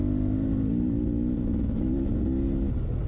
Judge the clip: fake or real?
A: real